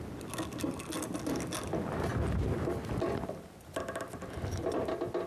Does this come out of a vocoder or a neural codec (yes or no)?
no